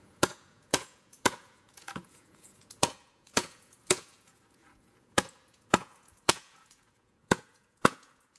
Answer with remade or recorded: remade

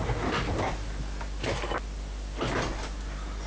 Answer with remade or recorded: recorded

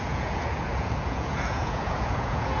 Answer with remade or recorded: remade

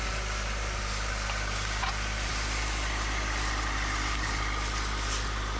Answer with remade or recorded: recorded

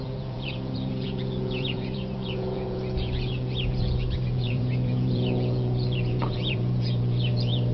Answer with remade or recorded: remade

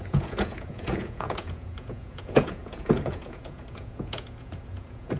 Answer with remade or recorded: remade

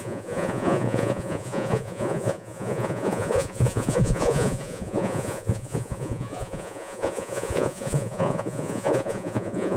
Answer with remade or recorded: remade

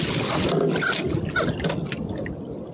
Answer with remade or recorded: recorded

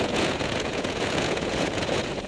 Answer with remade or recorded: remade